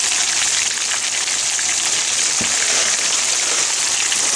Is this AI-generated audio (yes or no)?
no